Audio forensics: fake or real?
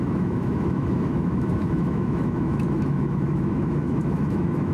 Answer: fake